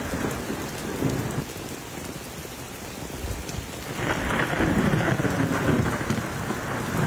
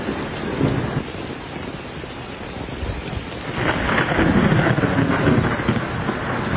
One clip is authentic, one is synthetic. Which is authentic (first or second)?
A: second